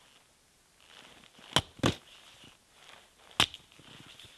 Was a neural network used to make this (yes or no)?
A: no